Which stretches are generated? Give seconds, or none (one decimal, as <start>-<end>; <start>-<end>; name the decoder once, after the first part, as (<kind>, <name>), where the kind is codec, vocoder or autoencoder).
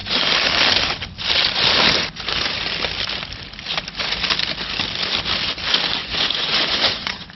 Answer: 6.0-7.3 (vocoder, Vocos)